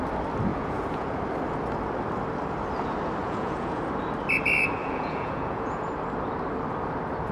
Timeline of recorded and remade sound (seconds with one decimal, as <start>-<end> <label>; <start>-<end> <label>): 0.0-0.5 recorded; 0.5-1.2 remade; 1.2-3.2 recorded; 3.2-3.8 remade; 3.8-4.8 recorded; 4.8-5.9 remade; 5.9-7.3 recorded